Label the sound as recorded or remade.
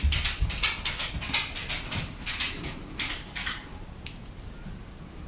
recorded